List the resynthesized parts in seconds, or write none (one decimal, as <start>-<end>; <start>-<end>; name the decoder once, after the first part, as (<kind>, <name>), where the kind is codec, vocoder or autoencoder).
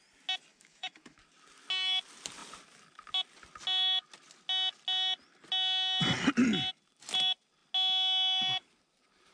0.5-1.2 (autoencoder, DAC-VAE)